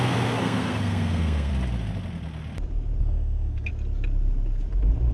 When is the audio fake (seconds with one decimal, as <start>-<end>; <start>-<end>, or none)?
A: 0.0-1.5; 3.0-3.7

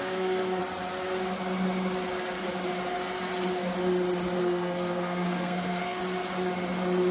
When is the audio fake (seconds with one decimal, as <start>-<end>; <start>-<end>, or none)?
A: 0.0-0.6; 4.4-6.0

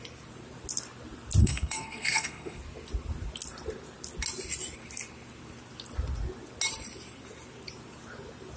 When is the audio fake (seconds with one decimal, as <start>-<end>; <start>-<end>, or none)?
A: 1.4-2.6